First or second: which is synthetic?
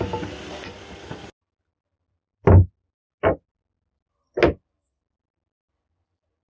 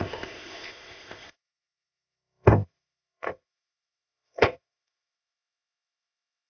second